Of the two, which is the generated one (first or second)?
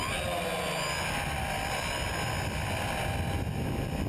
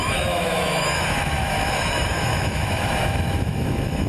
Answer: second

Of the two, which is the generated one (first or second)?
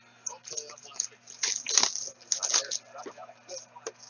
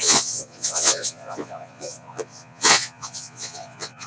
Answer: second